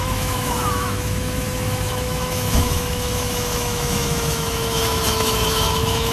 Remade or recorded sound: remade